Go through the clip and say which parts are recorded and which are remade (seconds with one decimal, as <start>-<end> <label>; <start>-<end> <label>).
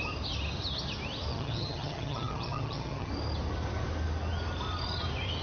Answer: 0.0-1.3 recorded; 1.3-3.1 remade; 3.1-5.4 recorded